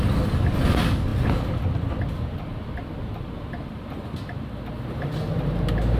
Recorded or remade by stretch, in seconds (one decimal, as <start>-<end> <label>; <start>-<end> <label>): 0.0-6.0 recorded